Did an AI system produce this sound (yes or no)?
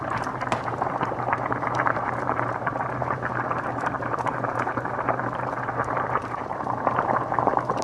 yes